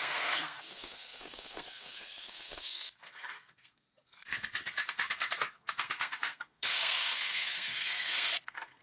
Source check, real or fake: fake